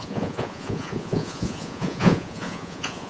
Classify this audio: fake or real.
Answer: fake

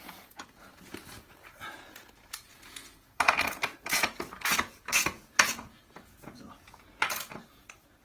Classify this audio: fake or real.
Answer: fake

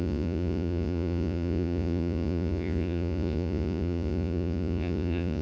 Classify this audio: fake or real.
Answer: fake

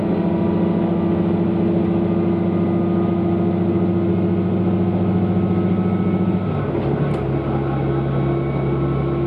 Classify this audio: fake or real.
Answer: real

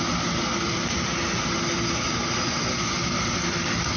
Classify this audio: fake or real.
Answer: real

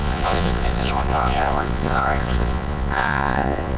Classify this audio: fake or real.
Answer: fake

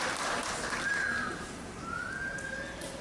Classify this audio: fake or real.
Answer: real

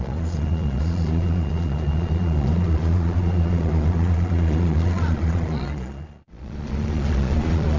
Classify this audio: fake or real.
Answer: fake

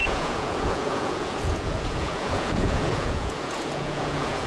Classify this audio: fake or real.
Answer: fake